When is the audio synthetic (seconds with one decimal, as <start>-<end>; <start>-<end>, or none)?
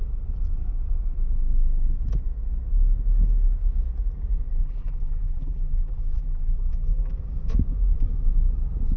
4.6-7.1